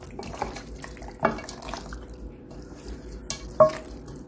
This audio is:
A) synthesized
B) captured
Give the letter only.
B